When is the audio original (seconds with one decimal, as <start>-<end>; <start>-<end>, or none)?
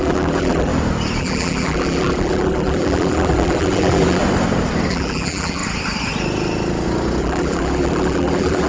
0.7-1.2; 4.2-4.9; 5.6-7.2